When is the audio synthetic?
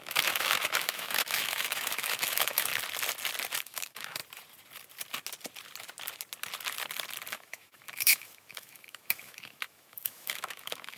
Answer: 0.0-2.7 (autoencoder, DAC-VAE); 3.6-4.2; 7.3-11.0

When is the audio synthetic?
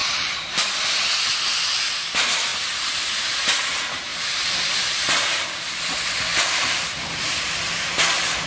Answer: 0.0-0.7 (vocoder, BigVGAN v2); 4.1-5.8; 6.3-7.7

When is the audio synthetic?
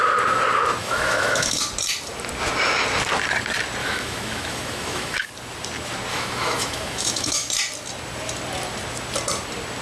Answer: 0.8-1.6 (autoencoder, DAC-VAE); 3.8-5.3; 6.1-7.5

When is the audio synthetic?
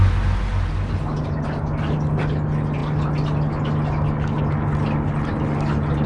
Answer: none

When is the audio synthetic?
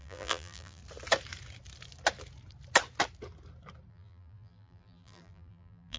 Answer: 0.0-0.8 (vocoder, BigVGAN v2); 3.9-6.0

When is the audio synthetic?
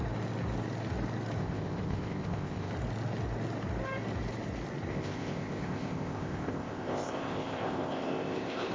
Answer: 1.4-2.7 (codec, ZipCodec); 4.9-8.7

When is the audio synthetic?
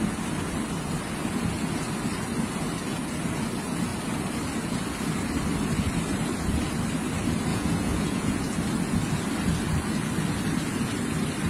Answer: 7.5-8.4 (vocoder, Vocos)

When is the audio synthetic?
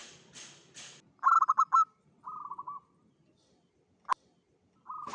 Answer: none